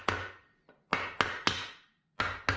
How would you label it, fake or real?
real